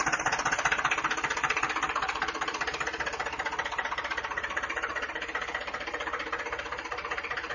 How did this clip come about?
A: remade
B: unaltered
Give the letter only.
A